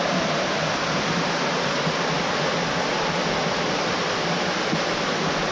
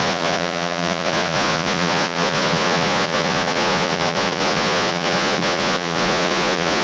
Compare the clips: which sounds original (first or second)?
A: first